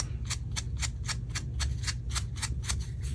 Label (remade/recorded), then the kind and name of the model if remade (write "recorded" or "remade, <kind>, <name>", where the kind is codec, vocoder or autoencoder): recorded